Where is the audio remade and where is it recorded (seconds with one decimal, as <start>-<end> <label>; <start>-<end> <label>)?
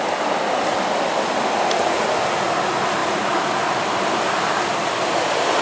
0.0-5.6 recorded